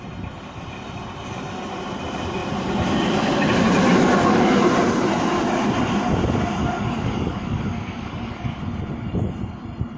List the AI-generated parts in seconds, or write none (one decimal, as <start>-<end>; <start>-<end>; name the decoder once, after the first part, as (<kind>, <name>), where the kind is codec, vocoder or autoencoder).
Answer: 6.6-8.6 (codec, DAC)